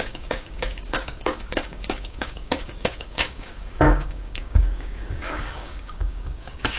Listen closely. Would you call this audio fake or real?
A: fake